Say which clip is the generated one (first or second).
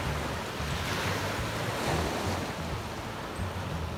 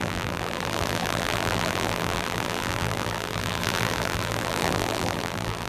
second